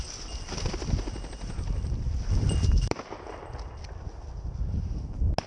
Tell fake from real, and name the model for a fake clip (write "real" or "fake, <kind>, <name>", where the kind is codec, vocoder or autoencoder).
real